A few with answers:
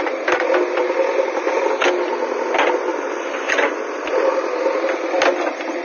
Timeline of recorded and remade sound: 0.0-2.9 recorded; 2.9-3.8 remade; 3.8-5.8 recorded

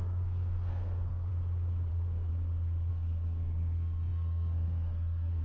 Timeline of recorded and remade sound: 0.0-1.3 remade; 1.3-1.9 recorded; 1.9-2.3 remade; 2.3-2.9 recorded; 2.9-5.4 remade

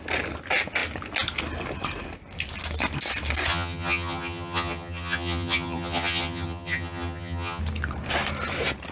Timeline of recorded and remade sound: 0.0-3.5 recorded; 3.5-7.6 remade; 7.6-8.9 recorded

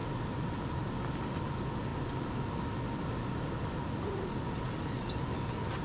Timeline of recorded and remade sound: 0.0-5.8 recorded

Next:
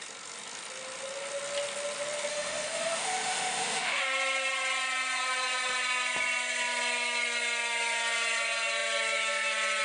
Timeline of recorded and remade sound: 0.0-2.3 recorded; 2.3-4.0 remade; 4.0-9.8 recorded

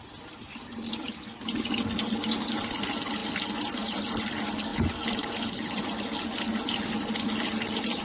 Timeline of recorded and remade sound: 0.0-4.7 recorded; 4.7-5.8 remade; 5.8-8.0 recorded